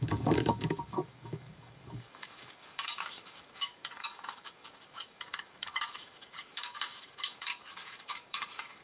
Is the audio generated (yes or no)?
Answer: yes